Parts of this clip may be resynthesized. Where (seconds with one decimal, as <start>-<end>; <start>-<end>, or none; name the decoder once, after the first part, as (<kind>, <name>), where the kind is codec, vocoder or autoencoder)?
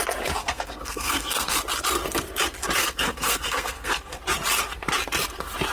0.4-1.6 (codec, SNAC); 2.8-4.2